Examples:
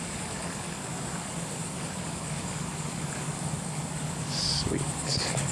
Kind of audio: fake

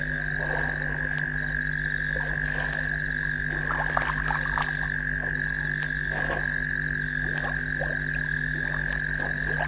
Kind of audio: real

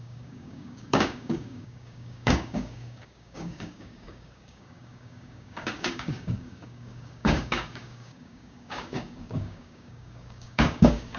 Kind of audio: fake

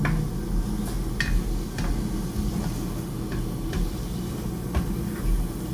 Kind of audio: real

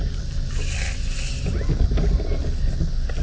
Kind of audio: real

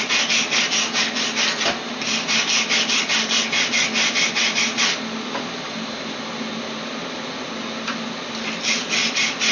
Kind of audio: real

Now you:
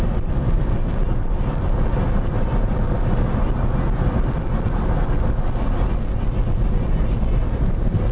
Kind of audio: real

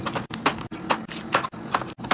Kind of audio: real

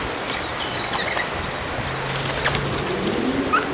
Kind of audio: real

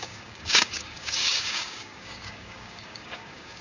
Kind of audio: fake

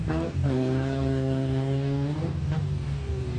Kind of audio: fake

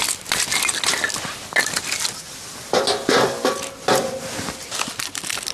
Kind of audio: real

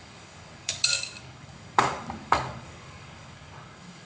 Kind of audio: fake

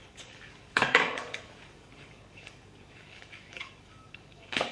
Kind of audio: fake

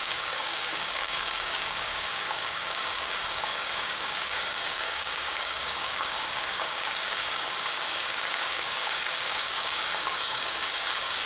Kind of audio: fake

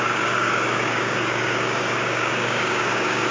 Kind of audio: fake